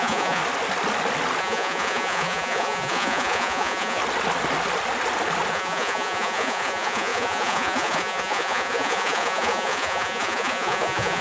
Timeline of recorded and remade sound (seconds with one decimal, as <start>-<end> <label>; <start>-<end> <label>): 0.0-0.4 remade; 0.4-1.4 recorded; 1.4-4.0 remade; 4.0-5.5 recorded; 5.5-11.2 remade